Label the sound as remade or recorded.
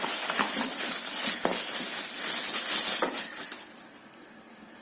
recorded